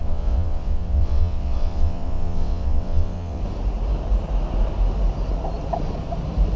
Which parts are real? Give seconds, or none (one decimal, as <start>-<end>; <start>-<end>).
3.4-6.6